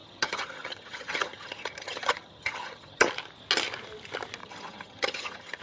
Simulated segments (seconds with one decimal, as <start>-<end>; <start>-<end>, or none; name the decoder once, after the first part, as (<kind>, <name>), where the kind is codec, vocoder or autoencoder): 0.0-3.1 (vocoder, HiFi-GAN); 4.4-5.6